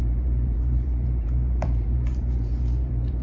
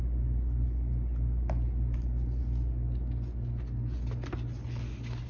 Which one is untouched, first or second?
second